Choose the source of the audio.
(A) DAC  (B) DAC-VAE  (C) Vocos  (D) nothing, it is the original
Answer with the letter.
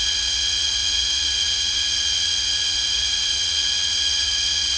C